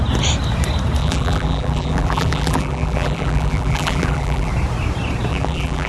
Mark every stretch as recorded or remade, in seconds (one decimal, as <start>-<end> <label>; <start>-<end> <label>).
0.0-1.0 recorded; 1.0-4.5 remade; 4.5-5.3 recorded; 5.3-5.9 remade